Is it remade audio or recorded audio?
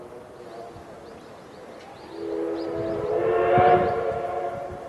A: recorded